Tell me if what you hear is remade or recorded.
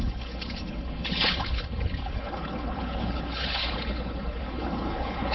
remade